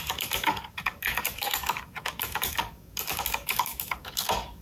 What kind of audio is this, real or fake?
fake